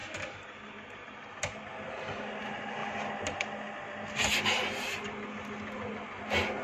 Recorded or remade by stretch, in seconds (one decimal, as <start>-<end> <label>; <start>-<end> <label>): 0.0-2.4 remade; 2.4-6.6 recorded